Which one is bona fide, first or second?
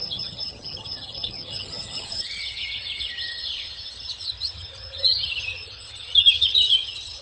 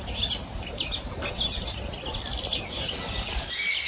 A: second